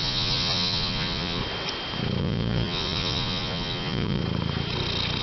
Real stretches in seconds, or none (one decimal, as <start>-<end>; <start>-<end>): 1.4-2.2; 4.2-5.2